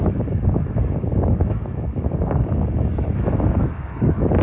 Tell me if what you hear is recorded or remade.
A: remade